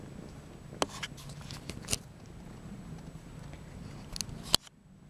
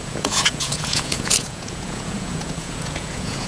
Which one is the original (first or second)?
first